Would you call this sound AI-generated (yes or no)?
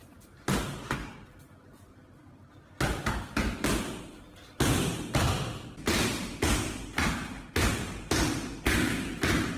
no